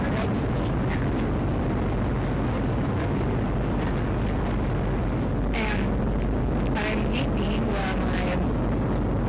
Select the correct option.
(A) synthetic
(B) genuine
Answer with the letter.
B